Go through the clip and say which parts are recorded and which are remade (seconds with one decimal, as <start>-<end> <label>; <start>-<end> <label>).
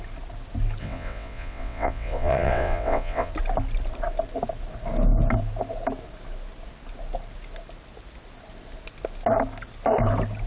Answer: 0.0-0.8 recorded; 0.8-3.3 remade; 3.3-10.5 recorded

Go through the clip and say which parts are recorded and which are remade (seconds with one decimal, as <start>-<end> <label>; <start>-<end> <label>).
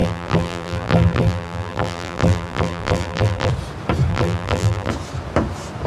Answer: 0.0-3.5 remade; 3.5-4.1 recorded; 4.1-4.9 remade; 4.9-5.9 recorded